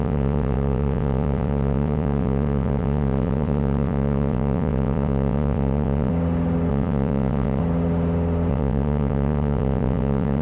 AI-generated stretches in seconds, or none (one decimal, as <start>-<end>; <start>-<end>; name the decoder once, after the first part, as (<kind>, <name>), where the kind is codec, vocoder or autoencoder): 0.0-6.1 (vocoder, WaveNeXt); 6.7-7.6; 8.5-10.4